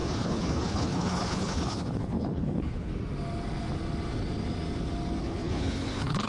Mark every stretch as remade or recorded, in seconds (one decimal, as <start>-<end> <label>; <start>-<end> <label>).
0.0-2.9 remade; 2.9-5.2 recorded; 5.2-6.3 remade